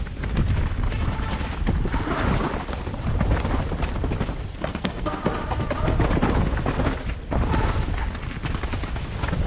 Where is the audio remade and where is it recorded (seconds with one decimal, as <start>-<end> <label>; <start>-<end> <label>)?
0.0-4.7 recorded; 4.7-5.2 remade; 5.2-9.5 recorded